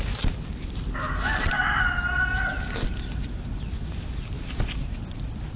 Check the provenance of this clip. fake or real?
real